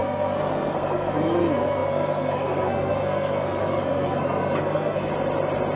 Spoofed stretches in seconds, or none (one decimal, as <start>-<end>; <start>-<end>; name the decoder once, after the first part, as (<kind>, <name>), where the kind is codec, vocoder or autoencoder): 0.0-5.1 (codec, SNAC)